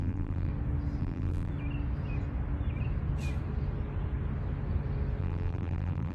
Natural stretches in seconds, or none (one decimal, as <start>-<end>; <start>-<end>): 0.5-1.0; 1.5-5.2